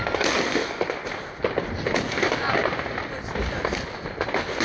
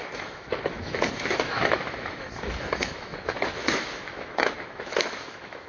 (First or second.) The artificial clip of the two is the second